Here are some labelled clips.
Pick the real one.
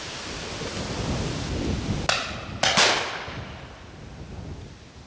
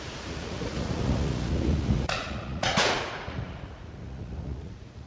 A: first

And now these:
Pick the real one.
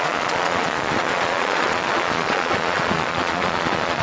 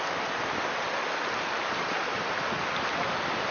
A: second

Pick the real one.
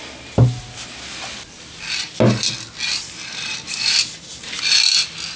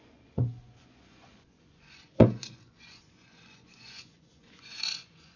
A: first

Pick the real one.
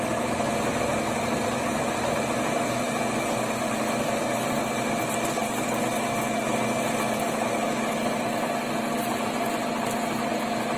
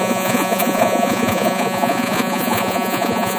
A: first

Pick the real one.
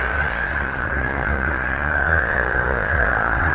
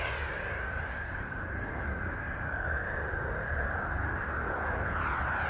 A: second